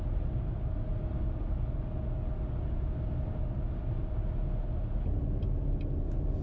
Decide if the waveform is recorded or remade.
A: recorded